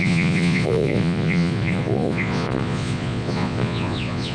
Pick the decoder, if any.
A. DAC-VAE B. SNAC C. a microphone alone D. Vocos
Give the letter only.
D